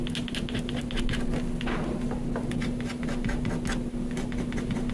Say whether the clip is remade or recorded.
recorded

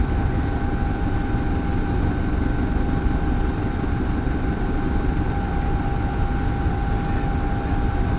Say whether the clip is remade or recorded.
recorded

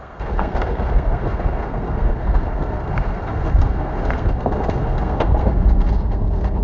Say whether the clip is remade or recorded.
remade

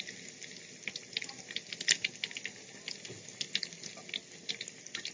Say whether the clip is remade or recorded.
recorded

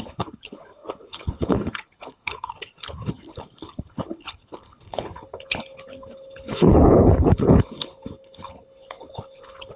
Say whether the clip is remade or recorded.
remade